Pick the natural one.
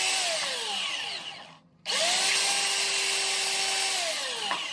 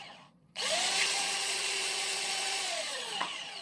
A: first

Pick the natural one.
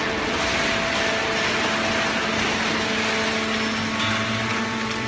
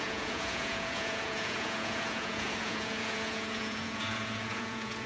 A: first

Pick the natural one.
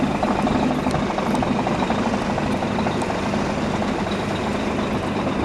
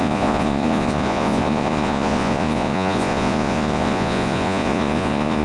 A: first